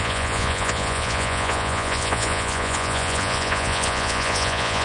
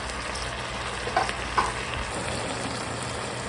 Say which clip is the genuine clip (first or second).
second